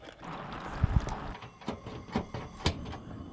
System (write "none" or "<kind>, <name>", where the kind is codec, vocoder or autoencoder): none